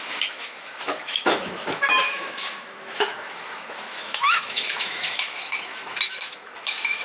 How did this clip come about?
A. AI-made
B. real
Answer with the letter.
A